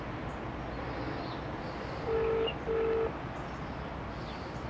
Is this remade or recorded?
recorded